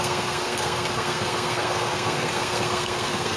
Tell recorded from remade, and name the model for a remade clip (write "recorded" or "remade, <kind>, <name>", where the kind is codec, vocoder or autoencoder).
remade, codec, SNAC